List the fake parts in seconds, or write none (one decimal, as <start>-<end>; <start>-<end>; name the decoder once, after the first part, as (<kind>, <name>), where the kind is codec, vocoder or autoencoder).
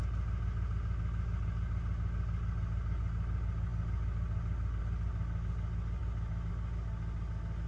none